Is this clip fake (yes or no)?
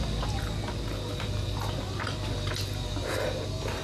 no